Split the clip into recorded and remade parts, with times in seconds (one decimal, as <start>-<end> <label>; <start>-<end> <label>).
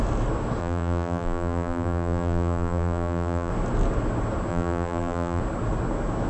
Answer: 0.0-0.6 recorded; 0.6-3.5 remade; 3.5-4.5 recorded; 4.5-5.4 remade; 5.4-6.3 recorded